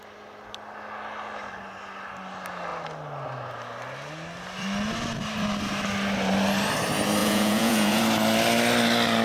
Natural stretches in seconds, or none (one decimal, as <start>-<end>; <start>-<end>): 0.0-7.2; 8.0-9.2